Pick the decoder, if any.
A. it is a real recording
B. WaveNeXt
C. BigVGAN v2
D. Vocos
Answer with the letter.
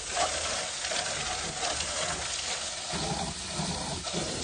A